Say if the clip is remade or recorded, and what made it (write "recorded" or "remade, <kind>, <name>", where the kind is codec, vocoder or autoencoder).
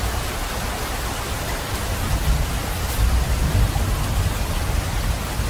recorded